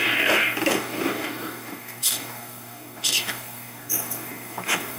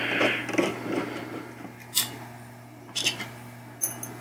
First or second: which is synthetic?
first